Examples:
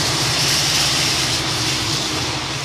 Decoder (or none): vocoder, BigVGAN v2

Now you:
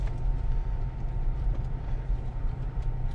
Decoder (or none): vocoder, BigVGAN v2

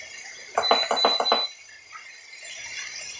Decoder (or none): vocoder, BigVGAN v2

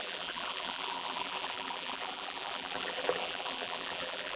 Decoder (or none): vocoder, BigVGAN v2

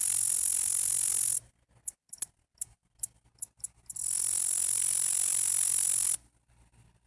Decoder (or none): none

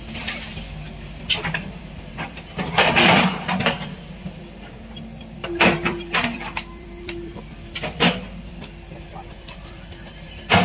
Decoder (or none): vocoder, BigVGAN v2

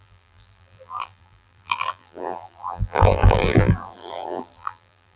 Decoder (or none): vocoder, BigVGAN v2